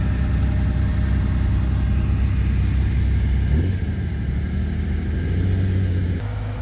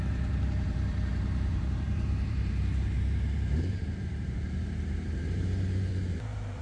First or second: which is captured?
first